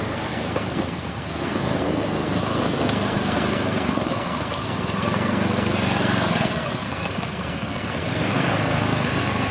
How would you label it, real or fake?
fake